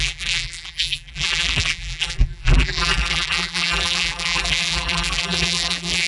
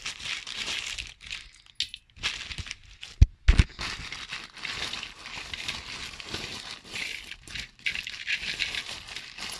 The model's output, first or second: first